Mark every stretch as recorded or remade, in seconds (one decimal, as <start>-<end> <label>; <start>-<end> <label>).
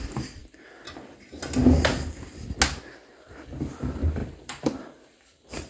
0.0-0.4 remade; 0.4-3.1 recorded; 3.1-5.7 remade